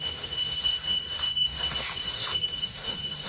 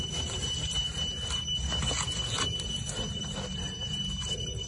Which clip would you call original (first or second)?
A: second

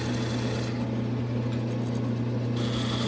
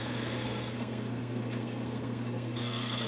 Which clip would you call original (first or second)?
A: first